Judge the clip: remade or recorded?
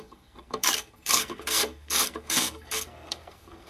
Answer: remade